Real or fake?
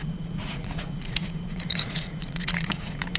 fake